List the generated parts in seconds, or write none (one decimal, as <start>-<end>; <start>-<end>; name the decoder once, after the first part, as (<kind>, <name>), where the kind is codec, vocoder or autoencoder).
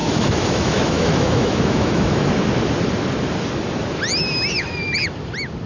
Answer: 0.0-2.3 (autoencoder, DAC-VAE)